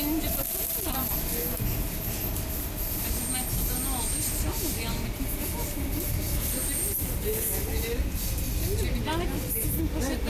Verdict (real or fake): real